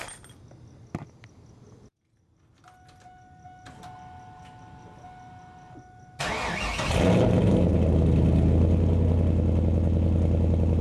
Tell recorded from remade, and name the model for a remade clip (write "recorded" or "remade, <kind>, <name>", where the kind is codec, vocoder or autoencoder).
recorded